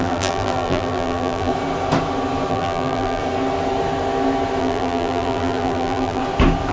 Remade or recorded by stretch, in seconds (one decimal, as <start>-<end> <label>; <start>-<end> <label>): 0.0-1.5 remade; 1.5-2.5 recorded; 2.5-3.2 remade; 3.2-4.6 recorded; 4.6-6.2 remade; 6.2-6.7 recorded